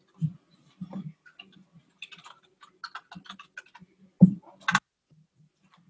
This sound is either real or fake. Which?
real